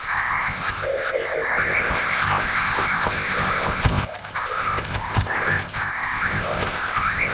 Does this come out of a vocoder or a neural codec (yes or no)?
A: yes